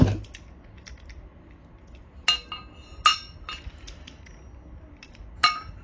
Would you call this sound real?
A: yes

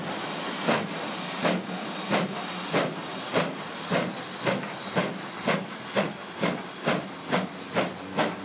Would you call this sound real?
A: yes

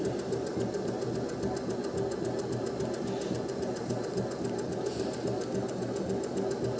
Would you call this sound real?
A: yes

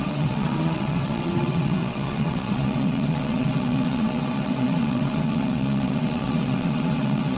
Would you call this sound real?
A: no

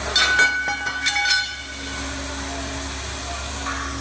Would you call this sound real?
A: yes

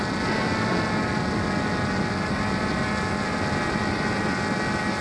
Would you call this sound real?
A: yes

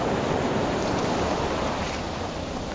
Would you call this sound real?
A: no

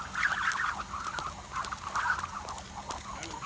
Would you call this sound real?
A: yes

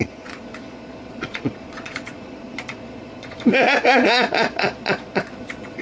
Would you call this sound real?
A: no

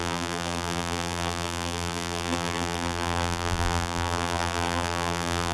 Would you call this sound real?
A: no